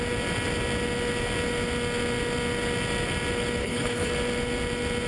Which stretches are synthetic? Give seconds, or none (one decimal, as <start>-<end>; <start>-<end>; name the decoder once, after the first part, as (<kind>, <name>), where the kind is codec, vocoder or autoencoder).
3.6-4.1 (codec, HILCodec)